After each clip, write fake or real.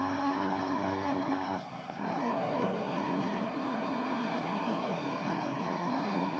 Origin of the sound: fake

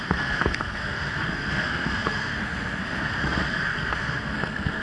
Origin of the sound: fake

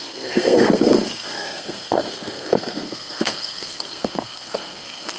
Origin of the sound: fake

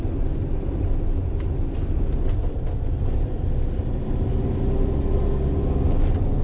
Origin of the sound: real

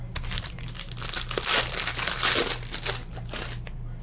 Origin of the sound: real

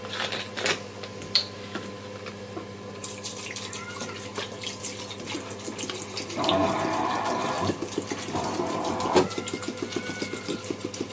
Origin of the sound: real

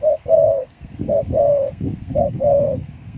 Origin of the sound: fake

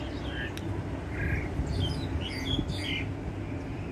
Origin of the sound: real